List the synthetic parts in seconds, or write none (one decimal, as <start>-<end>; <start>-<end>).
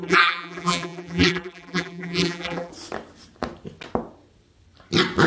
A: 0.0-2.7